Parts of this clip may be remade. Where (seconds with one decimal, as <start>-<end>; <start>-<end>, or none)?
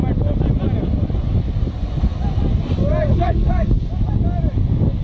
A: 3.1-3.7